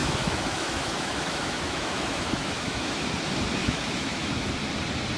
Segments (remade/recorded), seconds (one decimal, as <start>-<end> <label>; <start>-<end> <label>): 0.0-3.1 remade; 3.1-3.6 recorded; 3.6-4.5 remade; 4.5-5.2 recorded